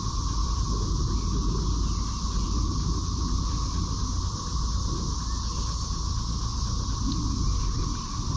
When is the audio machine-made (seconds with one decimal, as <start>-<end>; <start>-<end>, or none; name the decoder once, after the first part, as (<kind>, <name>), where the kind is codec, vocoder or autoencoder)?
0.4-3.5 (vocoder, BigVGAN v2)